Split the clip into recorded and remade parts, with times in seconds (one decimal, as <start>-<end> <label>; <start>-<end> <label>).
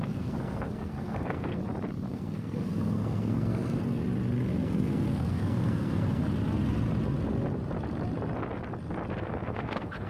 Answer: 0.0-1.6 remade; 1.6-2.1 recorded; 2.1-4.0 remade; 4.0-4.5 recorded; 4.5-6.2 remade; 6.2-9.2 recorded; 9.2-10.1 remade